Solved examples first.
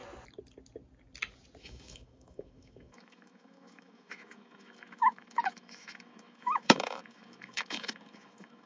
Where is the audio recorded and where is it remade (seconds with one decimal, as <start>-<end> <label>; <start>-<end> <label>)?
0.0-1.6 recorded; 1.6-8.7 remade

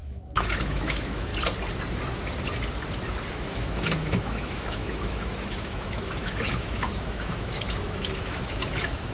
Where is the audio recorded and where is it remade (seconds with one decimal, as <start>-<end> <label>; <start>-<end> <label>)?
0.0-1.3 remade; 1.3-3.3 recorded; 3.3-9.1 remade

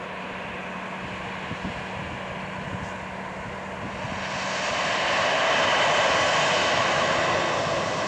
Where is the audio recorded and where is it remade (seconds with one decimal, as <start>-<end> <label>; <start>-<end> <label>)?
0.0-6.6 recorded; 6.6-7.1 remade; 7.1-8.1 recorded

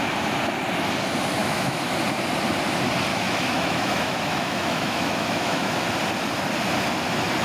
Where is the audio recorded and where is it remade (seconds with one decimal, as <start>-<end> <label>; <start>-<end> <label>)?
0.0-1.4 recorded; 1.4-2.0 remade; 2.0-3.1 recorded; 3.1-5.7 remade; 5.7-7.4 recorded

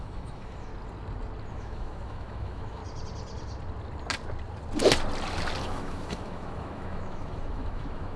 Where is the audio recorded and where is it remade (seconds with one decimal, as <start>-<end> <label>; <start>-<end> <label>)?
0.0-0.7 remade; 0.7-1.5 recorded; 1.5-2.8 remade; 2.8-5.6 recorded; 5.6-8.2 remade

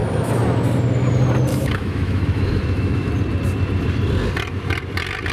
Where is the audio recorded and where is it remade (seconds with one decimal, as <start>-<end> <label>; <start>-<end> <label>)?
0.0-1.5 recorded; 1.5-3.1 remade; 3.1-5.3 recorded

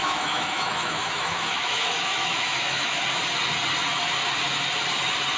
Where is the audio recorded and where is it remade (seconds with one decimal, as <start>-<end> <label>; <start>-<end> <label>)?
0.0-3.0 remade; 3.0-5.4 recorded

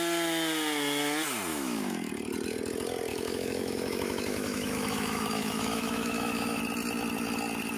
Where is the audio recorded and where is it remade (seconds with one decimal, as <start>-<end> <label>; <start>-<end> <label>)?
0.0-1.5 recorded; 1.5-2.1 remade; 2.1-3.1 recorded; 3.1-6.6 remade; 6.6-7.8 recorded